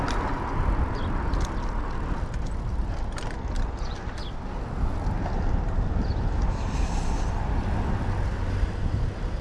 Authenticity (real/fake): real